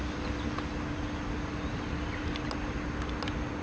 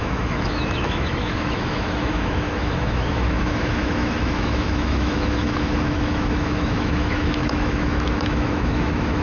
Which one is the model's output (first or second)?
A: second